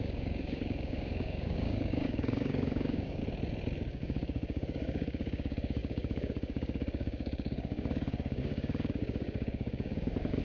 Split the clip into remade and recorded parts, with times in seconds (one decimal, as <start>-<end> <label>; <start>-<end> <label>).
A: 0.0-3.2 remade; 3.2-3.9 recorded; 3.9-10.4 remade